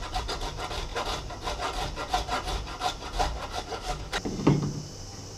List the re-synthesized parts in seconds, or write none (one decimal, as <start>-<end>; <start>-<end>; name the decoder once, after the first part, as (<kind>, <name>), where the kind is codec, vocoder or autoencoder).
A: 3.7-4.2 (codec, DAC)